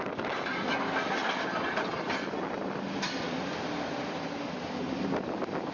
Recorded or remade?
recorded